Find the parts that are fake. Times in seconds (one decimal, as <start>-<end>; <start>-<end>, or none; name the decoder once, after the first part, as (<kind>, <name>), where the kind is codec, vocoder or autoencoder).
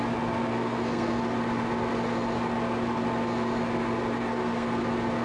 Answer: 0.5-1.2 (codec, SNAC); 4.2-4.7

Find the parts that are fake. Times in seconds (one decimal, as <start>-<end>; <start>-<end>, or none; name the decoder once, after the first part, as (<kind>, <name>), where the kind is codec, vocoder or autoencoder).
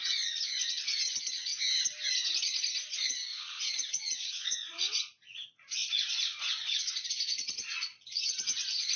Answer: 0.0-1.5 (vocoder, Vocos); 2.6-9.0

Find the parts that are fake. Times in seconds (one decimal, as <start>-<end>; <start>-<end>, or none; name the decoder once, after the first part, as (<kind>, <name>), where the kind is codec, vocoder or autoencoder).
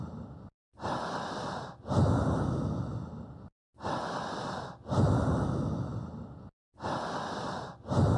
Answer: none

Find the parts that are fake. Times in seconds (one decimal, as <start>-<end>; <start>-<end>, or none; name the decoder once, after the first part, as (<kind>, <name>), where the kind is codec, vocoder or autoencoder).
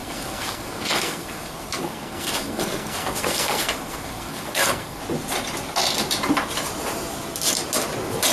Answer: 0.0-5.0 (codec, SNAC)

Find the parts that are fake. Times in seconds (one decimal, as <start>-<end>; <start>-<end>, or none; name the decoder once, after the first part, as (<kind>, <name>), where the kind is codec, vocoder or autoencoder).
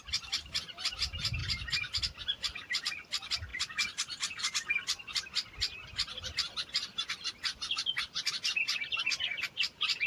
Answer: none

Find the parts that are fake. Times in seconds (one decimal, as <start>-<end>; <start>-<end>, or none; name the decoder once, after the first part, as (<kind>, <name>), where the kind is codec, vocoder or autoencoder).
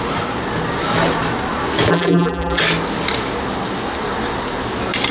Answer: 1.9-2.6 (vocoder, BigVGAN v2)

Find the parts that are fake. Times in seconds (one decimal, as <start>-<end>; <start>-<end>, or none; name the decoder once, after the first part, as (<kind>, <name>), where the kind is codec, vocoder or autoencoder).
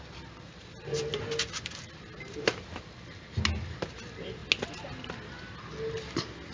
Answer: none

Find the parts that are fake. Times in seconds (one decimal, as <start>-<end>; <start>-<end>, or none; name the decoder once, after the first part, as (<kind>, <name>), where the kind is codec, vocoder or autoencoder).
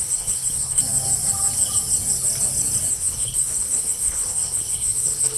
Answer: 0.0-0.8 (codec, HILCodec); 2.9-5.4